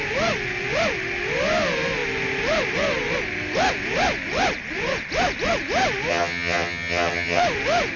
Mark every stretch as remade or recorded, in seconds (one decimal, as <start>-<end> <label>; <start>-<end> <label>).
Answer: 0.0-6.1 recorded; 6.1-7.4 remade; 7.4-8.0 recorded